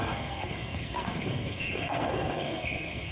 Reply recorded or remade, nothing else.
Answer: remade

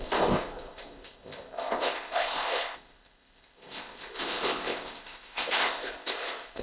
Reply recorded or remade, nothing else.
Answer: remade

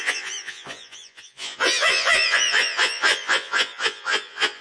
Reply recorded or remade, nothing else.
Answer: remade